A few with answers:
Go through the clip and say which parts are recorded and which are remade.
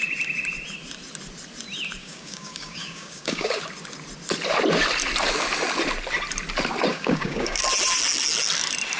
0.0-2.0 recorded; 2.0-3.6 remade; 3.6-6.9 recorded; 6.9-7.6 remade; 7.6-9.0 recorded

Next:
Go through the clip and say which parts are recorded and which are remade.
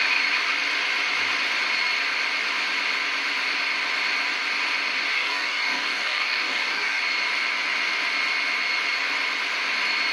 0.0-5.1 recorded; 5.1-7.0 remade; 7.0-10.1 recorded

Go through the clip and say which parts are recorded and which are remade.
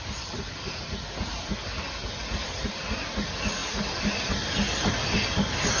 0.0-5.8 recorded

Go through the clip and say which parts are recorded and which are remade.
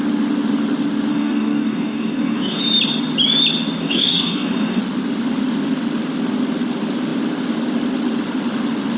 0.0-1.1 recorded; 1.1-2.6 remade; 2.6-3.8 recorded; 3.8-4.8 remade; 4.8-9.0 recorded